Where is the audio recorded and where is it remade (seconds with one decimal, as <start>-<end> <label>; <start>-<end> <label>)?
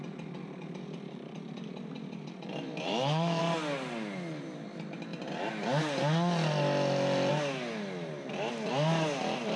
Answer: 0.0-2.9 recorded; 2.9-3.4 remade; 3.4-9.6 recorded